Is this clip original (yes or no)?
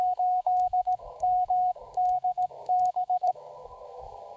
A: no